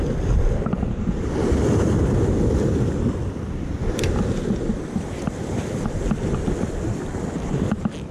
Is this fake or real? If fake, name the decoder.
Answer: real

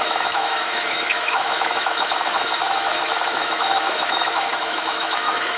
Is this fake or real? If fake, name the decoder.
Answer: fake, autoencoder, DAC-VAE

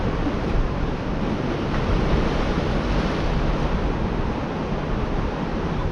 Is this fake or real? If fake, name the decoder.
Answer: real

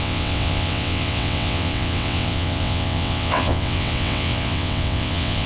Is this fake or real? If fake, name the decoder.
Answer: fake, vocoder, WaveNeXt